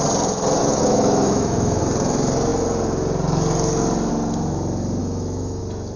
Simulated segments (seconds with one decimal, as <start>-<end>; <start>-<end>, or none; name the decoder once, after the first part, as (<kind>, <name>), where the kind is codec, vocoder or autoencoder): 0.6-1.8 (autoencoder, DAC-VAE); 5.0-5.6